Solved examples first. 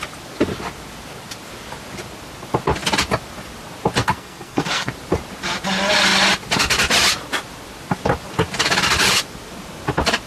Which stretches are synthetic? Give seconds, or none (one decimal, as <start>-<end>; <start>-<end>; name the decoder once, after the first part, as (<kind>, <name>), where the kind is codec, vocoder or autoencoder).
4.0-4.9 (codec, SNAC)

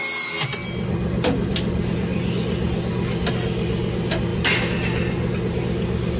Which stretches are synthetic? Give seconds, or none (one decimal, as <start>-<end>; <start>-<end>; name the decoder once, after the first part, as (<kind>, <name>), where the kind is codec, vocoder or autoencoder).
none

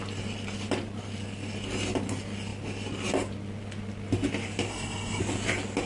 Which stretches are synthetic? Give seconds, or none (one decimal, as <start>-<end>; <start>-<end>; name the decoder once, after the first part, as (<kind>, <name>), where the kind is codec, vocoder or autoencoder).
4.7-5.2 (codec, SNAC)